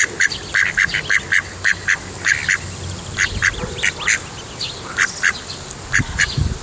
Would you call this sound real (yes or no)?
yes